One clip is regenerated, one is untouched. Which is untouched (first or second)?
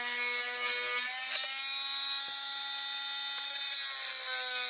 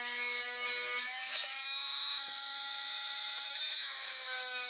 first